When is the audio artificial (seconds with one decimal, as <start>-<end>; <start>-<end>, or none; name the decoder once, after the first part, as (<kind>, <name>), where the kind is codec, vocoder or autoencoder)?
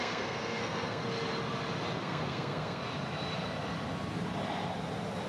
0.0-1.0 (codec, SNAC); 2.0-2.8